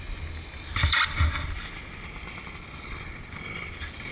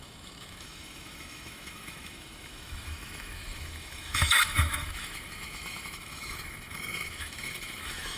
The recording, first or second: first